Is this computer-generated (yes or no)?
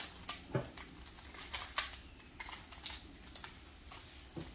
no